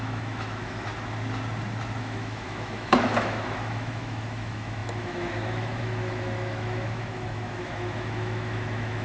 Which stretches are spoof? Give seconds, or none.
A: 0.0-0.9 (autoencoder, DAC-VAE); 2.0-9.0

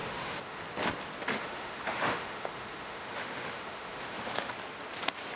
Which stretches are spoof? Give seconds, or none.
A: 0.0-0.6 (autoencoder, DAC-VAE); 1.3-4.5

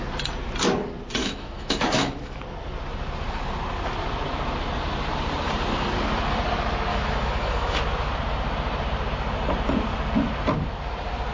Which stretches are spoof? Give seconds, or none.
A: 1.2-2.4 (autoencoder, DAC-VAE); 6.9-7.8

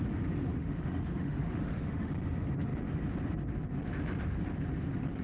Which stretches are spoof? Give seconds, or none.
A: 0.5-2.1 (autoencoder, DAC-VAE)

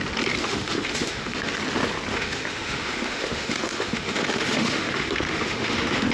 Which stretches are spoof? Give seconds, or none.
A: 0.4-1.5 (autoencoder, DAC-VAE); 2.1-6.1

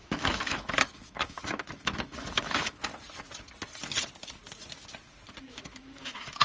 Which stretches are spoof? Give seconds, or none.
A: 0.0-2.9 (autoencoder, DAC-VAE); 5.4-6.4

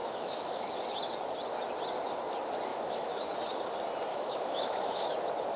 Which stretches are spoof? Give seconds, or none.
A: 0.0-0.7 (autoencoder, DAC-VAE); 2.7-3.3; 4.1-5.1